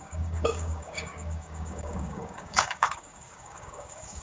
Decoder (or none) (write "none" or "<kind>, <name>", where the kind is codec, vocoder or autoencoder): codec, DAC